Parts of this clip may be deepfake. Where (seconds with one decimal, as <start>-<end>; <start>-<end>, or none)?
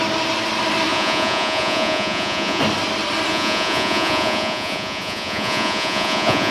0.9-2.6; 3.3-6.5